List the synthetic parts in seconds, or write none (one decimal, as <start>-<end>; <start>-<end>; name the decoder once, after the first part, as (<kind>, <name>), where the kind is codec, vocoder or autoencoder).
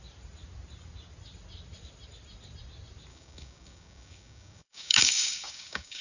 3.1-6.0 (codec, DAC)